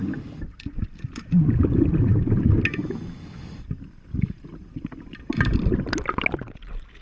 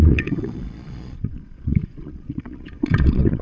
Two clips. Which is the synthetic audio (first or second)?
second